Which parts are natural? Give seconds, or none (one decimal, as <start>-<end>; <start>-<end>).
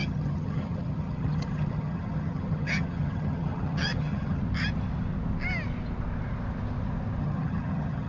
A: 4.4-7.2